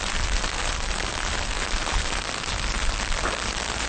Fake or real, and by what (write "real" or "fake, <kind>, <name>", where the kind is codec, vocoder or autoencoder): real